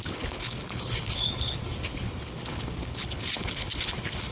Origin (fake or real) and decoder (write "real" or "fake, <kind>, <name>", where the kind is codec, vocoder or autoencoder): fake, codec, HILCodec